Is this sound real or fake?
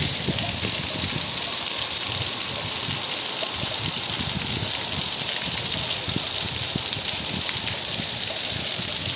real